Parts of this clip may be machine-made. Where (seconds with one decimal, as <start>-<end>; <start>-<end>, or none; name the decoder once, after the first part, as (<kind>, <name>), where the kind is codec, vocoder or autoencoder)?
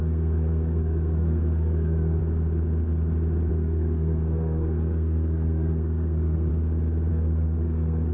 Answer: 0.0-2.2 (codec, SNAC); 3.5-6.5; 7.1-8.1